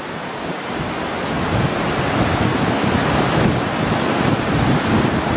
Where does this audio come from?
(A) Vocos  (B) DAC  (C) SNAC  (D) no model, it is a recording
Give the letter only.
D